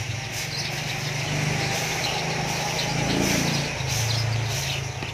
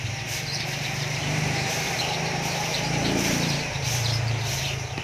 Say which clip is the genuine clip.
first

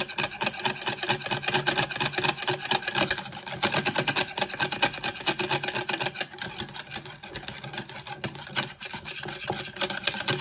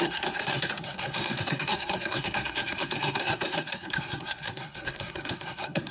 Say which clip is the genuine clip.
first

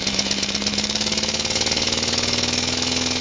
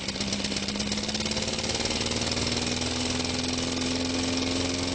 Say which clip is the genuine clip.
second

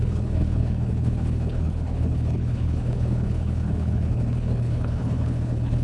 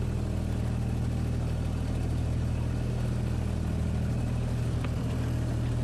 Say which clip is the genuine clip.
second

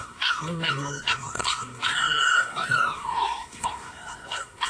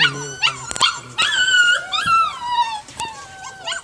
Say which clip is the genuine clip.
second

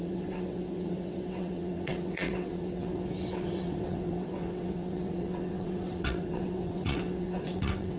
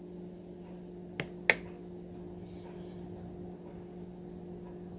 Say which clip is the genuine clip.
second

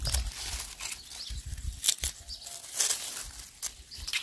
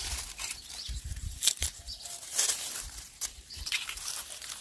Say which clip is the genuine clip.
first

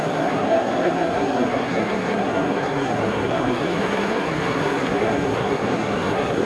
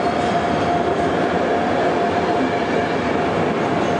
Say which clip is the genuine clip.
second